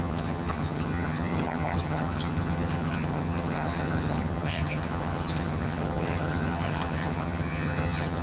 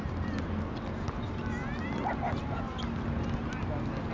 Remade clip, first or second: first